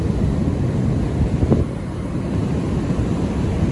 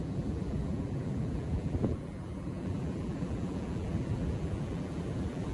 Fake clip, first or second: second